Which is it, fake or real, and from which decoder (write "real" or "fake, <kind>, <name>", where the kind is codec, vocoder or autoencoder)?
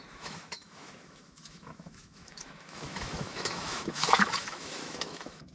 fake, autoencoder, DAC-VAE